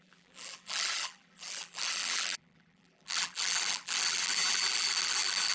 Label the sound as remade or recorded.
remade